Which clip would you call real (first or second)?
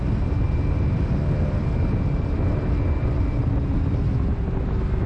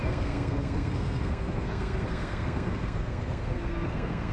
first